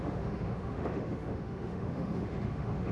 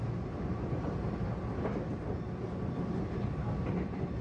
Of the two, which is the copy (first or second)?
first